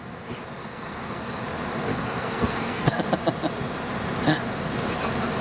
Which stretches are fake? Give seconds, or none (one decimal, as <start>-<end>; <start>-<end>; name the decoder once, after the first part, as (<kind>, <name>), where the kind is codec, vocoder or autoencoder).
0.6-1.4 (codec, SNAC); 1.9-3.0